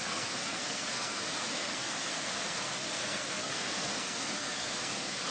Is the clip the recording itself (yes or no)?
no